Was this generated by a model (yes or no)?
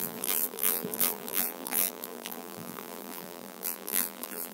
yes